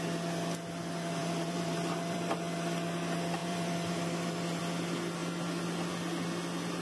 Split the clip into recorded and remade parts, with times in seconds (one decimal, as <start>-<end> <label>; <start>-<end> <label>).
0.0-1.2 recorded; 1.2-2.3 remade; 2.3-3.4 recorded; 3.4-4.6 remade; 4.6-6.8 recorded